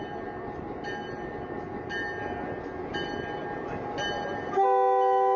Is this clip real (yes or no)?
yes